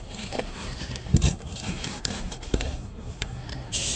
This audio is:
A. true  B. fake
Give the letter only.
B